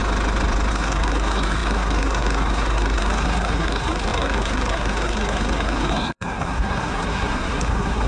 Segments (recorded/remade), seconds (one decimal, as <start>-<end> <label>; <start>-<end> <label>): 0.0-0.7 recorded; 0.7-8.1 remade